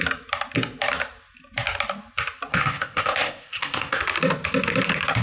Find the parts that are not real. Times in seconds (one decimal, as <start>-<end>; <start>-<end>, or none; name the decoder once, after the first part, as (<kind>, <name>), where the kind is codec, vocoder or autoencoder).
2.5-4.0 (codec, ZipCodec)